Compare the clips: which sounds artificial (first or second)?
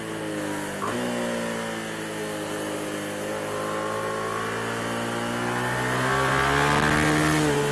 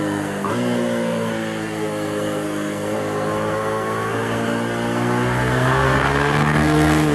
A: second